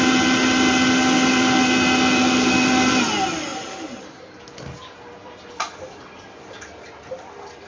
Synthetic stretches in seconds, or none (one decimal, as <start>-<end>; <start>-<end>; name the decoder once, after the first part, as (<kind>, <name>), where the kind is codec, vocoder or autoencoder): 3.5-4.4 (vocoder, BigVGAN v2)